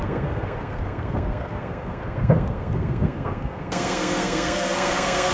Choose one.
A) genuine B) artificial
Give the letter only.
B